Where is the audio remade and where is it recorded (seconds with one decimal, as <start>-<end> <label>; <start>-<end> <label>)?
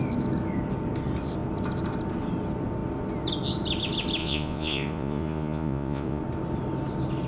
0.0-4.2 recorded; 4.2-6.2 remade; 6.2-7.3 recorded